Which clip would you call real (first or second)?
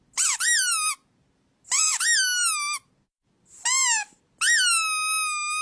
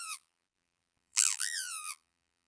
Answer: first